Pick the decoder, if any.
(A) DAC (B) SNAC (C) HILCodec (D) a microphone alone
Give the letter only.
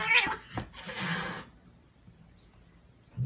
D